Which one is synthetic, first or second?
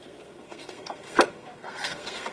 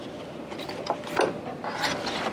first